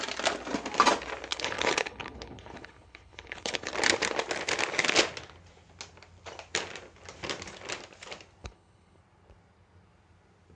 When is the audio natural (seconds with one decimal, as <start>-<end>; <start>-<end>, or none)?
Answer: 0.0-1.3; 3.7-8.4; 9.0-10.6